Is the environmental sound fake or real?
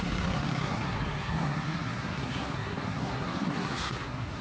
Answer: fake